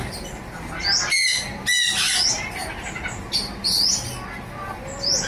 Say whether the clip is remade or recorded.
recorded